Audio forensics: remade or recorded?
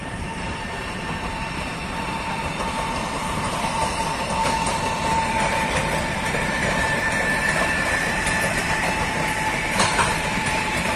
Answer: remade